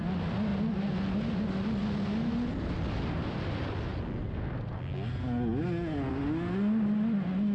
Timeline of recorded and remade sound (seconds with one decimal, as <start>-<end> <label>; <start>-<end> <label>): 0.0-7.5 recorded